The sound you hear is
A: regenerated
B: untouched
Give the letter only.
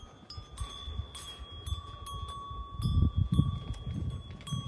B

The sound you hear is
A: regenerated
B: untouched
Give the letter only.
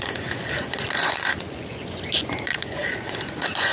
A